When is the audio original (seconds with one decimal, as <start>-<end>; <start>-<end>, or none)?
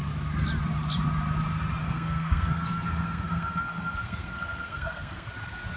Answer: 0.0-1.8; 5.3-5.8